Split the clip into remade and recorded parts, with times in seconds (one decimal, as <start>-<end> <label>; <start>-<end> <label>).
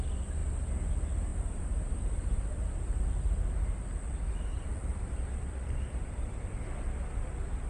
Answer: 0.0-1.3 recorded; 1.3-3.0 remade; 3.0-4.9 recorded; 4.9-6.2 remade; 6.2-7.7 recorded